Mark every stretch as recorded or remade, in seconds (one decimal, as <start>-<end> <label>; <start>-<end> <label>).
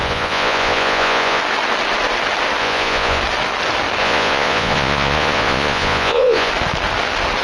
0.0-1.4 remade; 1.4-2.6 recorded; 2.6-3.2 remade; 3.2-4.0 recorded; 4.0-6.5 remade; 6.5-7.4 recorded